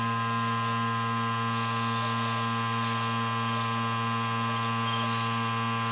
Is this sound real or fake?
real